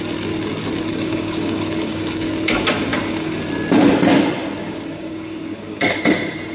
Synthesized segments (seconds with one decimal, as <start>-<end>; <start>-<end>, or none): 0.9-2.3; 2.9-3.4; 4.6-5.8